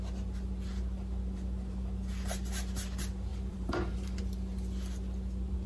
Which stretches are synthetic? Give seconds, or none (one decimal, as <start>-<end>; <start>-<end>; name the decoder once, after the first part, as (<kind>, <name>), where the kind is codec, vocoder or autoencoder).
3.3-4.2 (vocoder, BigVGAN v2)